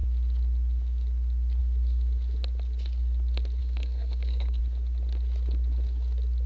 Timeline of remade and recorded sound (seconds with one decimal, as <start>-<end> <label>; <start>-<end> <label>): 0.0-3.6 recorded; 3.6-4.6 remade; 4.6-6.5 recorded